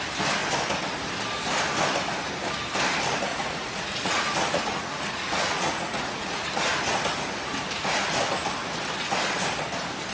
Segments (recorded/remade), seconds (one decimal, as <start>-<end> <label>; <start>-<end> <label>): 0.0-3.3 recorded; 3.3-6.5 remade; 6.5-10.1 recorded